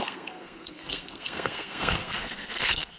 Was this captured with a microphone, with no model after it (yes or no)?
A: no